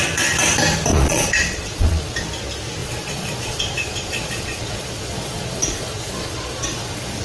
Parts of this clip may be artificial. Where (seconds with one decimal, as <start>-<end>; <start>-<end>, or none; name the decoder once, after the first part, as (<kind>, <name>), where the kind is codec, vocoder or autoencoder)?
0.9-2.2 (vocoder, Vocos); 2.8-7.2